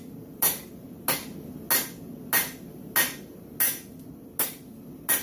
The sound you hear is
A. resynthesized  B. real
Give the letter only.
B